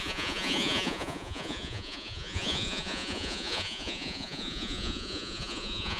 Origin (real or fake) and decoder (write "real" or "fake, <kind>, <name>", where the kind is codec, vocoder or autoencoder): fake, vocoder, Vocos